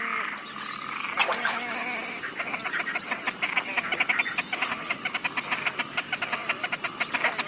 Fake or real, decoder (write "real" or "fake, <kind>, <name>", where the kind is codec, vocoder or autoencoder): real